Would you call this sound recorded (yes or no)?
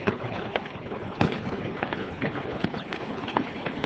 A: no